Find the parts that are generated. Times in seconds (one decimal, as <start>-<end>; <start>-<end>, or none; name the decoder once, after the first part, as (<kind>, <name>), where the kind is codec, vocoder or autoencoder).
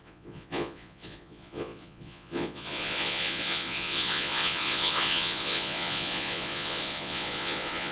0.0-7.9 (vocoder, Vocos)